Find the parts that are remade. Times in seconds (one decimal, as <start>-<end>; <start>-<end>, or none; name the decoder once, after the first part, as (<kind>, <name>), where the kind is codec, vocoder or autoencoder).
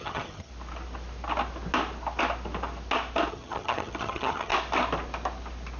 0.0-0.5 (vocoder, HiFi-GAN); 3.3-4.5